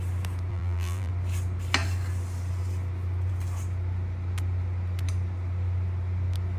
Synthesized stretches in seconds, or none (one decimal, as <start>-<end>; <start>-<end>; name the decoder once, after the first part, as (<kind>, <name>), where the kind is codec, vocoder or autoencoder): 0.5-1.1 (vocoder, BigVGAN v2)